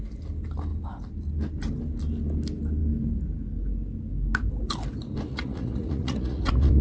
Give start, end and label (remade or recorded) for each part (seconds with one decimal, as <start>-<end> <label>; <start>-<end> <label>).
0.0-5.3 recorded; 5.3-6.8 remade